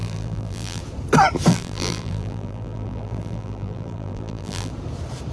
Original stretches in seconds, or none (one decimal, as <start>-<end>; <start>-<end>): 0.8-1.5; 4.7-5.3